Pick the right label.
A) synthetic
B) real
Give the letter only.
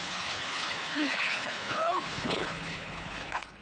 A